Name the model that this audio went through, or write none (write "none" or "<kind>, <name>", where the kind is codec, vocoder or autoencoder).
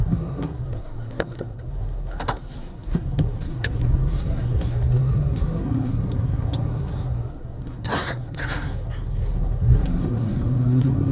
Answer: codec, SNAC